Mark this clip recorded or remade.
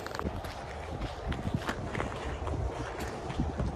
recorded